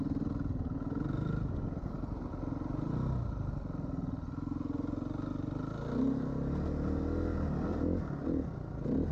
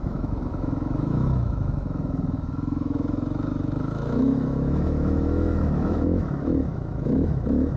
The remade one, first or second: second